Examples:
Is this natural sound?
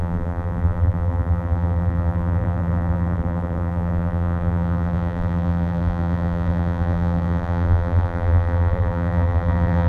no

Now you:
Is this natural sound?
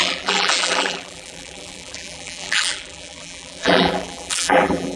no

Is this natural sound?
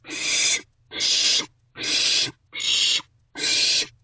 yes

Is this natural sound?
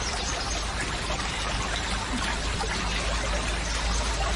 yes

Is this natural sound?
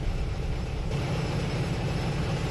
no